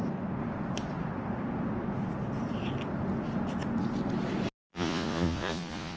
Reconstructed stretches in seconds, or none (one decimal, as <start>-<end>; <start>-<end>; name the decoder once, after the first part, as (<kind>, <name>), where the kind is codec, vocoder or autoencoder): 4.7-6.0 (vocoder, Vocos)